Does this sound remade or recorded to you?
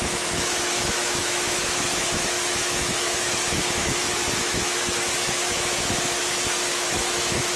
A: remade